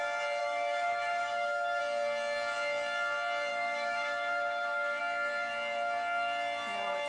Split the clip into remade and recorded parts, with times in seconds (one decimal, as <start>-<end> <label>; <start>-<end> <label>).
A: 0.0-0.4 recorded; 0.4-1.8 remade; 1.8-3.5 recorded; 3.5-5.0 remade; 5.0-7.1 recorded